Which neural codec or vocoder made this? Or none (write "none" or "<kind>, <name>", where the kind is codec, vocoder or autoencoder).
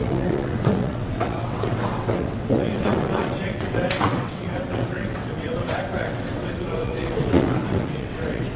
vocoder, WaveNeXt